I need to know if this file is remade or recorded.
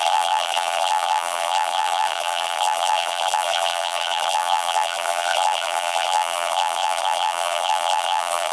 remade